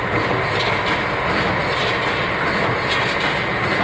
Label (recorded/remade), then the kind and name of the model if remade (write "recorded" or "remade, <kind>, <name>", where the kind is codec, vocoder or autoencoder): recorded